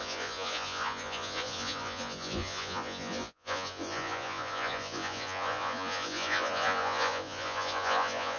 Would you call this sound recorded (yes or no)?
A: no